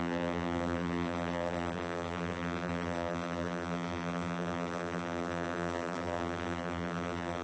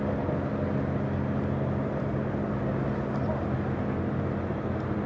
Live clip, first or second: second